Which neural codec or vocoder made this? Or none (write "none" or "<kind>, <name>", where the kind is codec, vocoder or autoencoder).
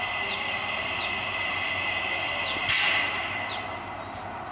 none